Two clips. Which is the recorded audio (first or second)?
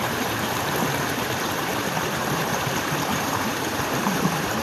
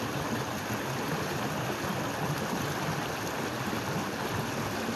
second